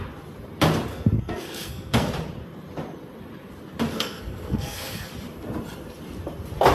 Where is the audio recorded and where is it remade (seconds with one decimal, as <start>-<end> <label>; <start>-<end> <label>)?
0.0-0.9 recorded; 0.9-2.1 remade; 2.1-3.9 recorded; 3.9-5.1 remade; 5.1-6.7 recorded